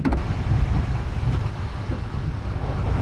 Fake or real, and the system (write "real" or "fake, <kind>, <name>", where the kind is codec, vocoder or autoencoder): fake, autoencoder, DAC-VAE